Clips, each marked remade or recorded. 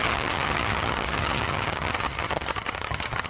remade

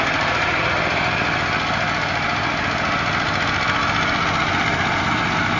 recorded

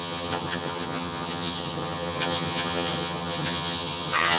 remade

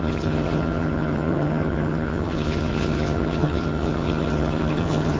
remade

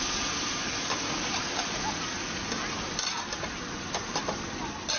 recorded